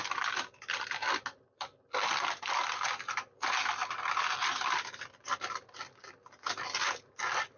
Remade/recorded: recorded